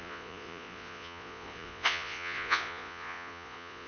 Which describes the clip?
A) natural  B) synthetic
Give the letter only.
B